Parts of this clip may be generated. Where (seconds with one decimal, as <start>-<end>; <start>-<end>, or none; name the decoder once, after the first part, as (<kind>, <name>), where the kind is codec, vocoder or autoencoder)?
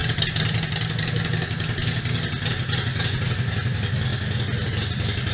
none